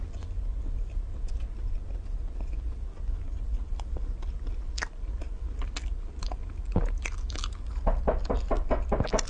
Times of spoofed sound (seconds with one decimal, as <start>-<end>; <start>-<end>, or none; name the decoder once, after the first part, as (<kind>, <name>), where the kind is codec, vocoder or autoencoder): none